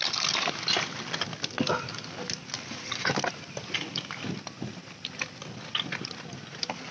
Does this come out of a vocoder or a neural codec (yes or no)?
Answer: no